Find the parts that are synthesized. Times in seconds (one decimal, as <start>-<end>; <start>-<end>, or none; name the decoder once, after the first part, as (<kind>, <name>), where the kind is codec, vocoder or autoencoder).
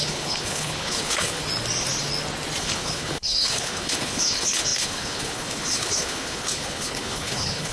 0.0-1.4 (codec, HILCodec); 2.6-7.7